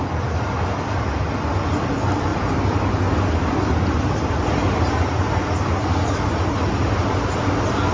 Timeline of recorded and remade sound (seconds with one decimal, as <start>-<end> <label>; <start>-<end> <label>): 0.0-7.9 recorded